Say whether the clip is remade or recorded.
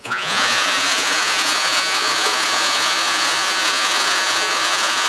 remade